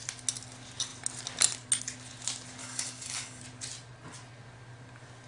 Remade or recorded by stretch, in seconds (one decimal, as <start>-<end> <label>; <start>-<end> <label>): 0.0-2.6 recorded; 2.6-3.4 remade; 3.4-5.3 recorded